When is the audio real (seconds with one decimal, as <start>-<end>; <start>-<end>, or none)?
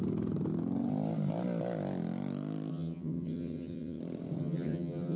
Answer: 0.0-2.7; 4.0-4.4